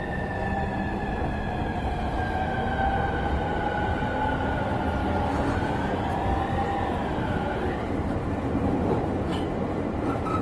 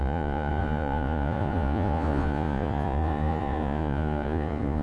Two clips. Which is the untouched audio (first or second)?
first